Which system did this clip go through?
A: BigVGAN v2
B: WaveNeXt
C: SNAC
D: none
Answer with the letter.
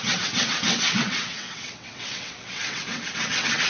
B